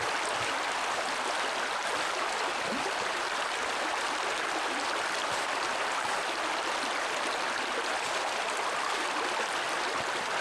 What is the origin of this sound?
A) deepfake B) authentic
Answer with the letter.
B